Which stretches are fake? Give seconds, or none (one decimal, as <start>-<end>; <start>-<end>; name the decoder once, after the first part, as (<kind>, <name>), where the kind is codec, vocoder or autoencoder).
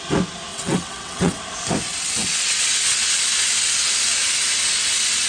0.5-1.4 (vocoder, WaveNeXt); 1.9-3.2